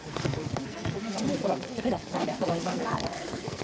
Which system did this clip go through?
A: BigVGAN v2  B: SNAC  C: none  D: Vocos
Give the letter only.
B